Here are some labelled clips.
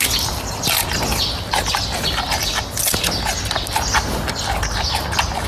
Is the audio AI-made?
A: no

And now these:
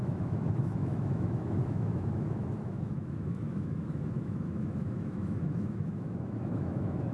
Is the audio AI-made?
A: yes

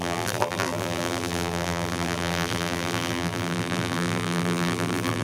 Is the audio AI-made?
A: yes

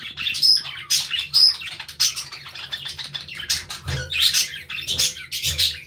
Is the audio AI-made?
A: yes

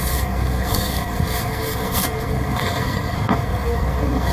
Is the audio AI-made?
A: yes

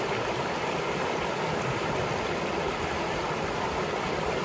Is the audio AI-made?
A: no